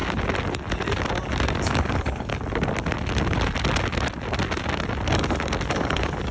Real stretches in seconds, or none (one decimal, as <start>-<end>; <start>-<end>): 0.0-1.6; 2.3-5.7